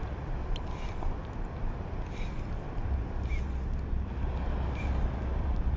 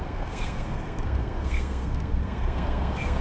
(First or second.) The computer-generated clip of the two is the second